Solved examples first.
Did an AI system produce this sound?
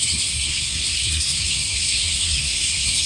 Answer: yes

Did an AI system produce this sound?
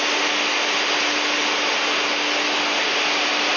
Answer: no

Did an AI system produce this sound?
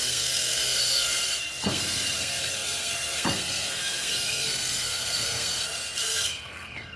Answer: yes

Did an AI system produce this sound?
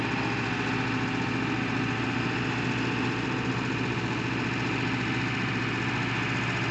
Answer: no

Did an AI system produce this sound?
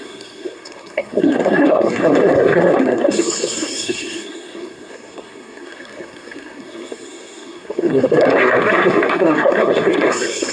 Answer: yes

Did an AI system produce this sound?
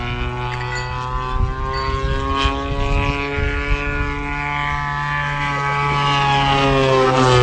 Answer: no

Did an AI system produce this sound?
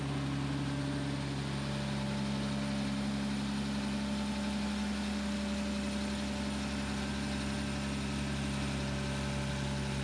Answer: no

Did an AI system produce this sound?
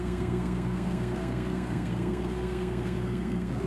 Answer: yes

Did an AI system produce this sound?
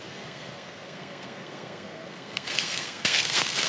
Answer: yes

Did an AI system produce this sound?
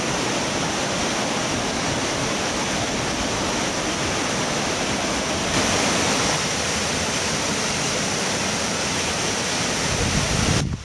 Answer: no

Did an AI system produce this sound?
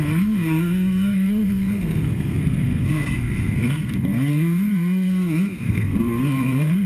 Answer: yes